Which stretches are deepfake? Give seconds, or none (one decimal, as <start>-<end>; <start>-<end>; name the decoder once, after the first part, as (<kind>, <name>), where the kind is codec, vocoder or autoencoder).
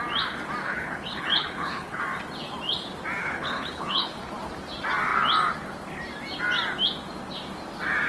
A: 0.6-2.0 (codec, HILCodec); 3.2-4.2